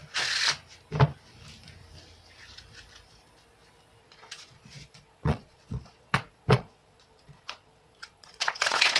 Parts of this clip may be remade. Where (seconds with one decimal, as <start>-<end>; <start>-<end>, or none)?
4.0-9.0